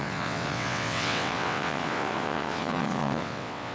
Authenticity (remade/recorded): remade